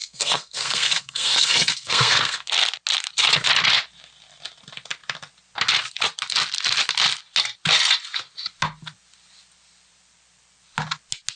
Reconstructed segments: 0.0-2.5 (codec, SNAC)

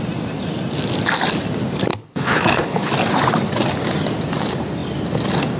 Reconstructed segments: 1.9-2.9 (codec, HILCodec)

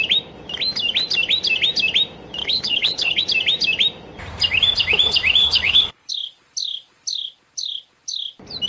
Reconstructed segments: 2.4-3.2 (codec, HILCodec); 5.4-6.1

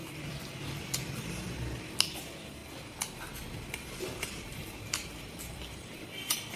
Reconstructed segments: 0.0-2.6 (vocoder, BigVGAN v2); 5.2-6.6

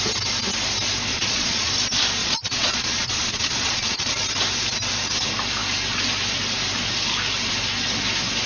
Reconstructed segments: 1.1-1.7 (vocoder, Vocos); 2.2-4.1